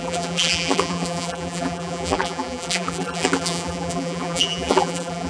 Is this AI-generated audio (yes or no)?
yes